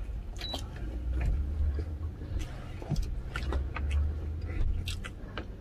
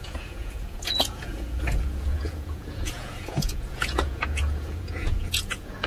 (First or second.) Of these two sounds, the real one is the first